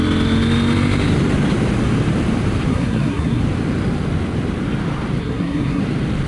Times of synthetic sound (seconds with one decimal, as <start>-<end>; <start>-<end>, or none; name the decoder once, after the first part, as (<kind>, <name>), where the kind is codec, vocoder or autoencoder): 2.7-3.4 (codec, SNAC); 5.2-5.8